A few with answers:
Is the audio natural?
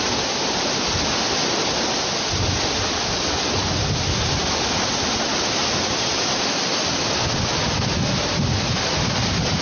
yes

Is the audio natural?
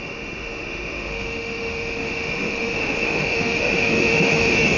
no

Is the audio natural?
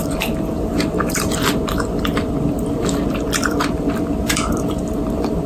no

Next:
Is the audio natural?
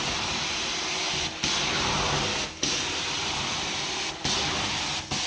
yes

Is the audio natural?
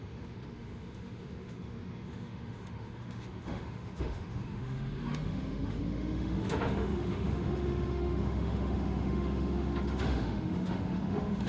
no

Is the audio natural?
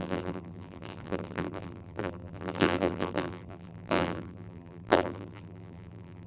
no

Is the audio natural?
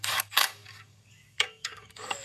no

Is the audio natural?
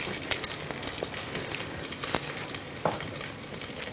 yes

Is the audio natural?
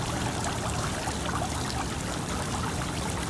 yes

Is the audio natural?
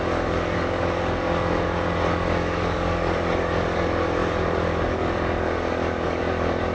no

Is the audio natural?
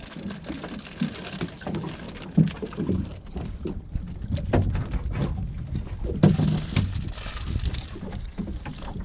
yes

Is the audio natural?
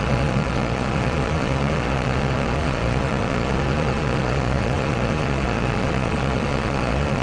no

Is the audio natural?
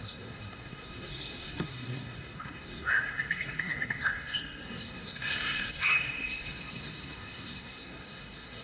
no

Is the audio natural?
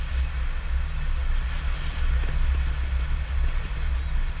yes